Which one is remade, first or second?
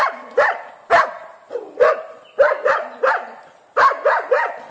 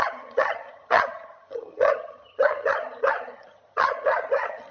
second